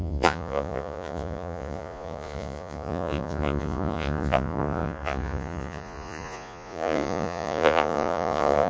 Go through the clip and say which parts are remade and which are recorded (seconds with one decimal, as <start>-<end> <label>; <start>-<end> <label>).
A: 0.0-8.7 remade

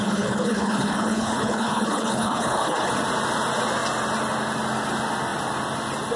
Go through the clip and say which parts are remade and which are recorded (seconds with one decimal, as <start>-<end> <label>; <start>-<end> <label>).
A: 0.0-2.9 remade; 2.9-6.2 recorded

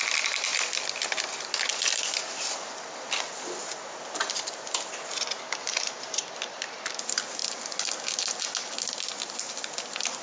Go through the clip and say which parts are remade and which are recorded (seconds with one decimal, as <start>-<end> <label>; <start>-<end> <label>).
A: 0.0-10.2 recorded

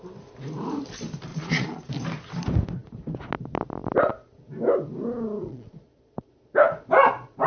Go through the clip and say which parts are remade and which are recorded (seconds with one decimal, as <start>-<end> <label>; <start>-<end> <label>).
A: 0.0-1.3 recorded; 1.3-1.9 remade; 1.9-5.4 recorded; 5.4-6.4 remade; 6.4-7.5 recorded

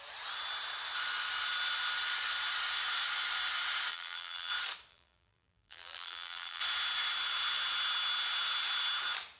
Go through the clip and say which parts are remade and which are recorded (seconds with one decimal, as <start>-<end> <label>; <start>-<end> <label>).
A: 0.0-3.9 recorded; 3.9-4.5 remade; 4.5-4.9 recorded; 4.9-6.6 remade; 6.6-9.4 recorded

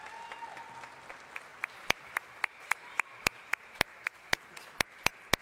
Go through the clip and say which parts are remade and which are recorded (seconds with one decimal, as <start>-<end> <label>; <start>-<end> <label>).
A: 0.0-1.5 recorded; 1.5-4.7 remade; 4.7-5.4 recorded

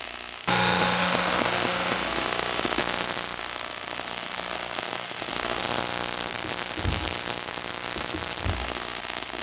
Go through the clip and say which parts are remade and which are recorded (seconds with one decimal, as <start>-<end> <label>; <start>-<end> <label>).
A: 0.0-2.8 remade; 2.8-3.4 recorded; 3.4-5.6 remade; 5.6-8.5 recorded; 8.5-9.4 remade

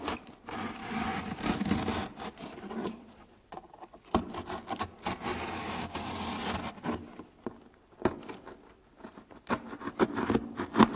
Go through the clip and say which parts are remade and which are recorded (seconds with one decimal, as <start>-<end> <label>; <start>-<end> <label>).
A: 0.0-2.8 recorded; 2.8-3.6 remade; 3.6-11.0 recorded